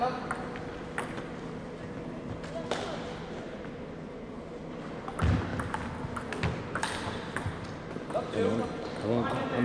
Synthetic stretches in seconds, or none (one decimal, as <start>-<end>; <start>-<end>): none